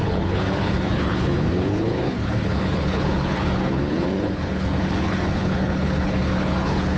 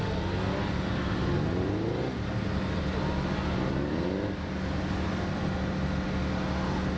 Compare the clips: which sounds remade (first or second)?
first